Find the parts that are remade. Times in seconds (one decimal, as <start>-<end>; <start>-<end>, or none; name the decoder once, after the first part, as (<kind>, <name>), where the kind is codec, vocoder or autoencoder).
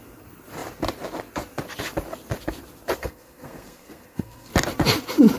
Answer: 3.0-4.5 (codec, SNAC)